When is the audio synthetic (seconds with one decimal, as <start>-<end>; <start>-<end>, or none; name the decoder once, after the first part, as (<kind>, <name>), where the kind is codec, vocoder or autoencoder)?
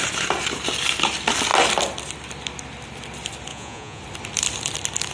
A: 3.5-4.0 (vocoder, Vocos)